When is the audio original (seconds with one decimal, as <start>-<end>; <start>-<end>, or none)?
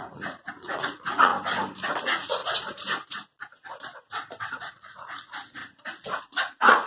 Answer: 1.3-2.0; 2.4-4.5; 5.6-6.2